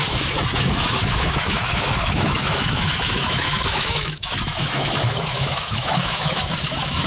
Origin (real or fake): fake